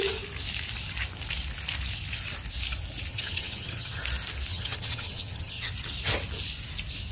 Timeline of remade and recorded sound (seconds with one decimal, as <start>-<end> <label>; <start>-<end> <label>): 0.0-3.1 recorded; 3.1-4.0 remade; 4.0-4.5 recorded; 4.5-5.7 remade; 5.7-7.1 recorded